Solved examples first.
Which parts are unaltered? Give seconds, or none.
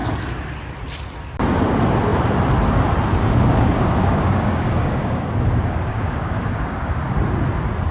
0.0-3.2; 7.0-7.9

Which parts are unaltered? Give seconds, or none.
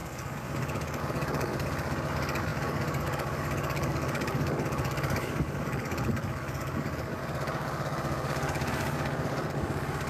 none